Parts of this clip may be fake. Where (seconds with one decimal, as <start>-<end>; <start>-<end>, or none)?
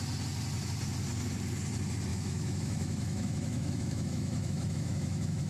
2.1-5.5